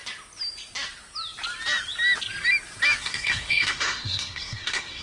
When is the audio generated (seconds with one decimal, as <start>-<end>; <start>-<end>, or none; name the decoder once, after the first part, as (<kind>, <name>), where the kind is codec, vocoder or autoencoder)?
3.0-5.0 (codec, SNAC)